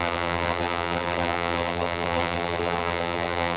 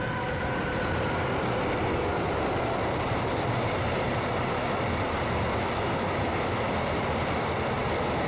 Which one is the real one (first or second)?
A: second